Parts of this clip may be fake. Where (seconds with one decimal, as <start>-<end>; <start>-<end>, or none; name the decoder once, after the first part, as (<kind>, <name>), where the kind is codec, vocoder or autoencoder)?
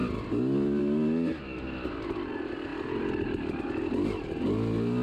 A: 0.0-0.8 (vocoder, BigVGAN v2); 2.7-3.8